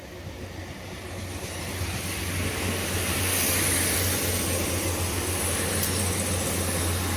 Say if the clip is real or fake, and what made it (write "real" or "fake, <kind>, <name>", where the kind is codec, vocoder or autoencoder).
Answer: real